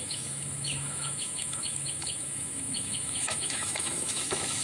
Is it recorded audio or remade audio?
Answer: remade